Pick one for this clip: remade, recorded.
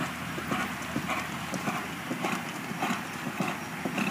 recorded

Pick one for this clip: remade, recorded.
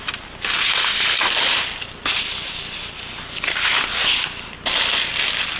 recorded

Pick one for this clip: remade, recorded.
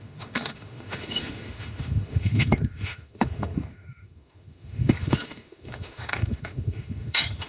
remade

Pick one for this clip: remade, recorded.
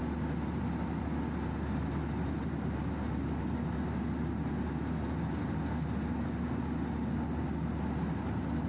recorded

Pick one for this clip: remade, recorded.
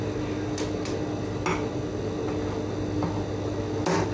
recorded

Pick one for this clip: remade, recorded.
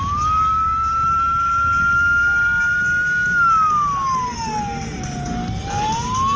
recorded